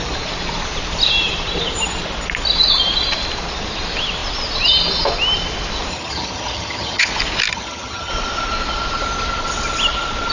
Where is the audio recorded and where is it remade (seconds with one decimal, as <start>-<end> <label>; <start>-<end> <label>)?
0.0-5.9 recorded; 5.9-7.1 remade; 7.1-7.5 recorded; 7.5-8.1 remade; 8.1-10.3 recorded